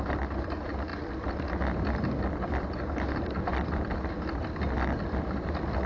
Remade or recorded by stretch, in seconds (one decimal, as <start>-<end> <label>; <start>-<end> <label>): 0.0-5.9 recorded